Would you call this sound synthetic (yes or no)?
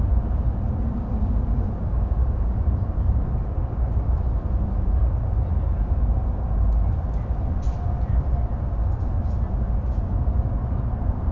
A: no